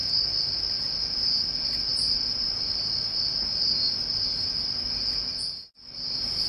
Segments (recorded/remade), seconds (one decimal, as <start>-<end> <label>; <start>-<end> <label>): 0.0-6.5 recorded